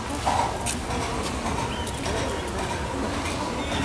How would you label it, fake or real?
real